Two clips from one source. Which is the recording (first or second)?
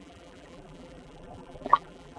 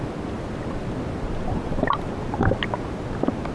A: second